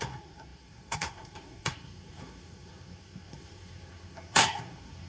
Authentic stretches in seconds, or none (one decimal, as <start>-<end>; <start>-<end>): none